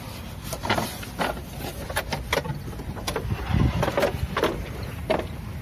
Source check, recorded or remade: recorded